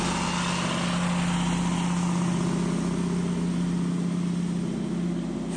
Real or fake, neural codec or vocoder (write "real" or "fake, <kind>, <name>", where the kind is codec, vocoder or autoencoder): real